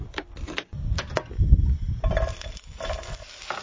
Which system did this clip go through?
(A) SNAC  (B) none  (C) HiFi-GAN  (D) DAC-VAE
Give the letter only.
B